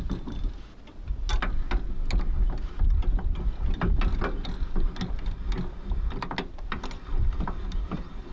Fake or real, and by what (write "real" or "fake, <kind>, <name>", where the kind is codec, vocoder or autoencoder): real